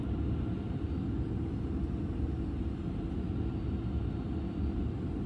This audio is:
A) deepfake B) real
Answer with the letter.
B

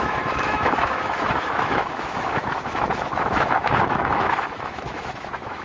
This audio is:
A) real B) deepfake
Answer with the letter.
B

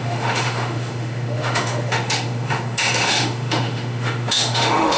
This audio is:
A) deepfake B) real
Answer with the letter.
A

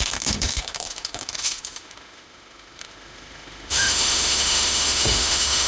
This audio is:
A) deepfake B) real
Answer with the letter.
A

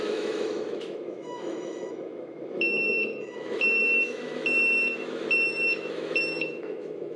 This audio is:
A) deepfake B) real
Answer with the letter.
A